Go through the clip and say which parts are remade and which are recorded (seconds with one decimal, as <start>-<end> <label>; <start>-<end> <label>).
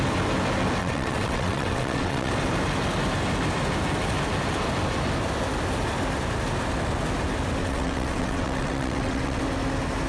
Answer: 0.0-0.8 recorded; 0.8-2.3 remade; 2.3-7.6 recorded; 7.6-9.4 remade; 9.4-10.1 recorded